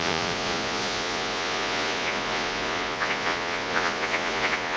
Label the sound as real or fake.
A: fake